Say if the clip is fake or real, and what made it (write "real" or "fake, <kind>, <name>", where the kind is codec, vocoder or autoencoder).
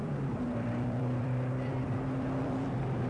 fake, vocoder, BigVGAN v2